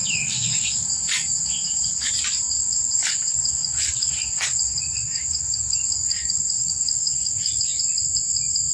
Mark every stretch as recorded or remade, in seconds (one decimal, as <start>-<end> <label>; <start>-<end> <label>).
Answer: 0.0-2.1 remade; 2.1-2.6 recorded; 2.6-7.6 remade; 7.6-8.7 recorded